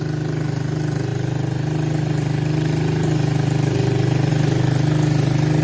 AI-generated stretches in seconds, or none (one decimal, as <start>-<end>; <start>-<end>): none